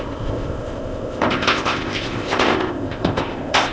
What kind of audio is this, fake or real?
fake